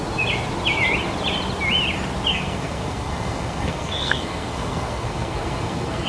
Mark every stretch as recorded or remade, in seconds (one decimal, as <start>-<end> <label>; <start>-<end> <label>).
0.0-2.3 recorded; 2.3-6.1 remade